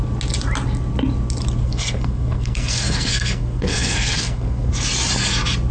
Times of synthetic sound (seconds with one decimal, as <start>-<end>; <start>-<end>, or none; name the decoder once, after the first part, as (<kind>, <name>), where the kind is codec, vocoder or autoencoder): 1.6-4.7 (codec, SNAC)